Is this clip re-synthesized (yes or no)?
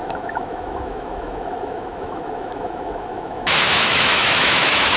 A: yes